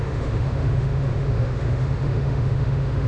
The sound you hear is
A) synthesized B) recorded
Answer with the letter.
A